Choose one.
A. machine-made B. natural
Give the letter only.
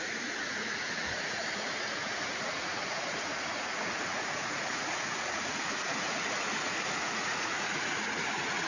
A